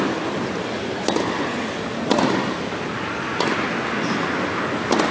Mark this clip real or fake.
real